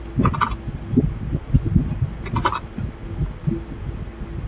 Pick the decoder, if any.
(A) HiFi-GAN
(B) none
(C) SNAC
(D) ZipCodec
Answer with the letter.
B